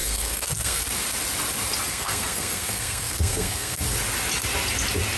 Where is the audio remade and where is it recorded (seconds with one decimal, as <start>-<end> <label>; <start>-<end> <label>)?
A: 0.0-0.8 remade; 0.8-1.9 recorded; 1.9-3.8 remade; 3.8-5.2 recorded